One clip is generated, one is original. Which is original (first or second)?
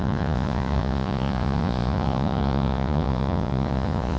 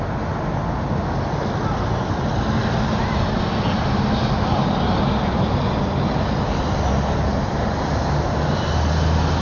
second